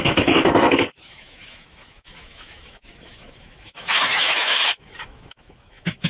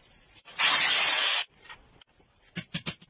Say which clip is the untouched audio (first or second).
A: second